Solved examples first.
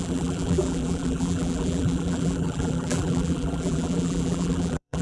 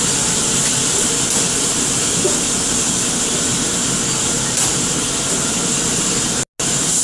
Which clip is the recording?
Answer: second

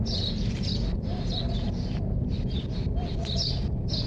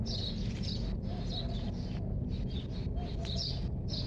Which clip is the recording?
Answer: second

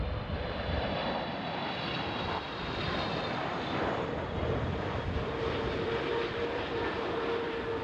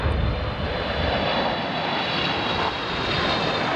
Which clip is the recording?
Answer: second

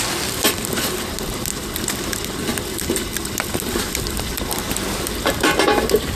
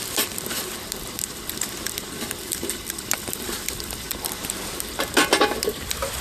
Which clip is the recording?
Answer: first